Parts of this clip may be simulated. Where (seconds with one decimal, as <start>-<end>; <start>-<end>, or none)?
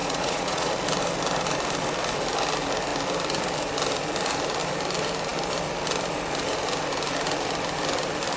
0.0-0.7